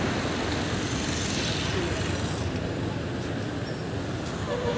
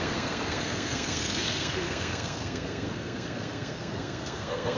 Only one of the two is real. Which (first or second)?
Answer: first